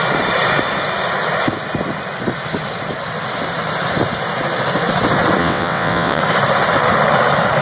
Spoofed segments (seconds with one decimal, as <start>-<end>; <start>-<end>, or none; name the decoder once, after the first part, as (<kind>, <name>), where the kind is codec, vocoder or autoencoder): 5.4-6.2 (vocoder, WaveNeXt)